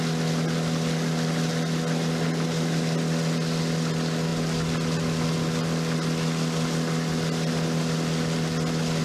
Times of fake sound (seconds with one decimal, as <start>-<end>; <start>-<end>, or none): none